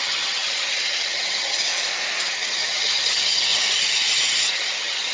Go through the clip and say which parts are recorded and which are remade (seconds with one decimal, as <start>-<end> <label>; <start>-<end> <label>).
0.0-1.7 remade; 1.7-2.3 recorded; 2.3-5.1 remade